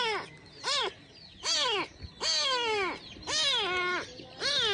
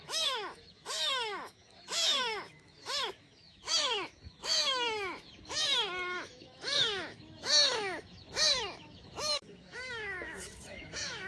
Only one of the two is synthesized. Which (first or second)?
second